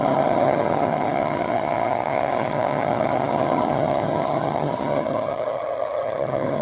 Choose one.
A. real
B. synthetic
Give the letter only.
B